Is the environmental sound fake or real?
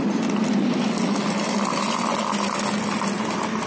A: real